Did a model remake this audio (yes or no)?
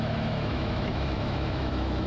yes